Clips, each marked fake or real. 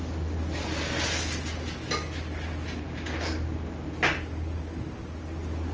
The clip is real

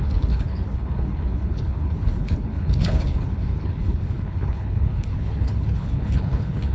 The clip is fake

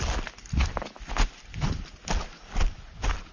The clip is real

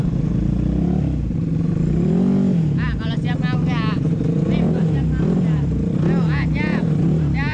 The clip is real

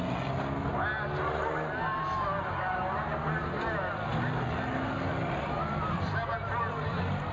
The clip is real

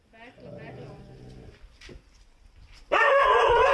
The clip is real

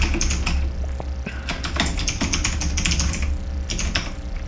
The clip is real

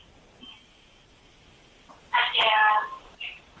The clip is real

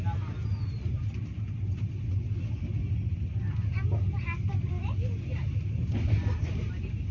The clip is real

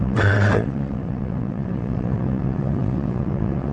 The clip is fake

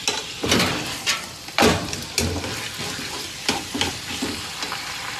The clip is fake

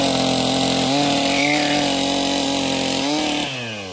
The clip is real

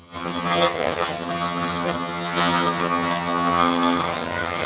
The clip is fake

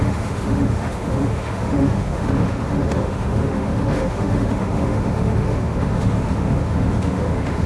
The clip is fake